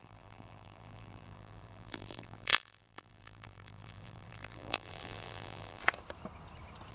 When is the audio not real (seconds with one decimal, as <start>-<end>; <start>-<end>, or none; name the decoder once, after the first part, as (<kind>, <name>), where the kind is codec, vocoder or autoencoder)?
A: 0.0-5.8 (vocoder, BigVGAN v2)